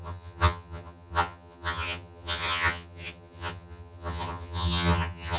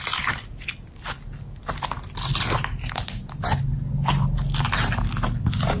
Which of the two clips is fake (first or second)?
first